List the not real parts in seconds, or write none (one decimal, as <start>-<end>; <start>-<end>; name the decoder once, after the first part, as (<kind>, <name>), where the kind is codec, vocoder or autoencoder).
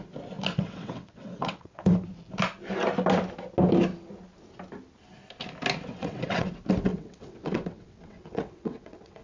0.5-1.9 (vocoder, WaveNeXt); 5.9-6.5; 6.9-9.2